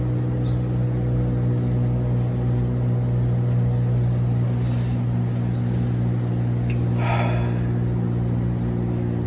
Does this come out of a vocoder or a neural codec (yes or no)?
no